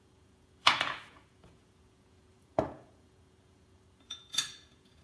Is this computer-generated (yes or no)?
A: yes